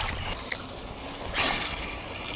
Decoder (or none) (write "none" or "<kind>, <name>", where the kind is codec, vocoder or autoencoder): none